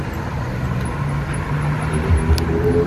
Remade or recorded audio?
recorded